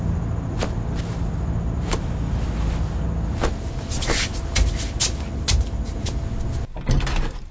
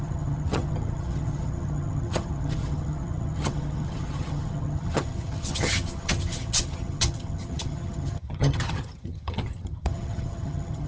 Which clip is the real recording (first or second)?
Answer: first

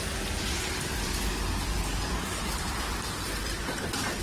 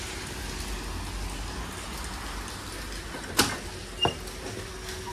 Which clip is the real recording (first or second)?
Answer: second